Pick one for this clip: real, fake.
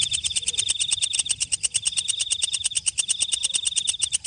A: real